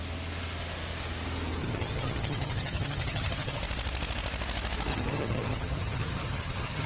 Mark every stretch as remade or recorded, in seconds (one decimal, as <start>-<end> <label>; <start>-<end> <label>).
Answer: 0.0-1.6 recorded; 1.6-3.6 remade; 3.6-4.9 recorded; 4.9-6.9 remade